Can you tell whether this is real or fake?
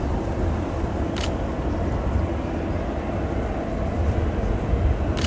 real